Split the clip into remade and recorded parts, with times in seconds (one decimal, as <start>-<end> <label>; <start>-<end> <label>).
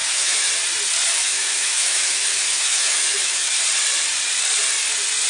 0.0-0.5 remade; 0.5-1.2 recorded; 1.2-3.6 remade; 3.6-5.3 recorded